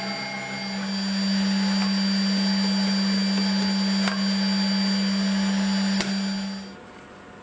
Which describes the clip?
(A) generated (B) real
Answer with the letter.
B